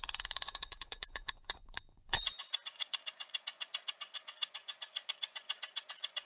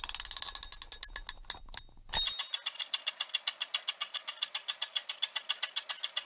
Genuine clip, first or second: second